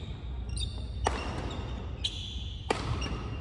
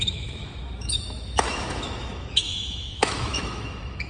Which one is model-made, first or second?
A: second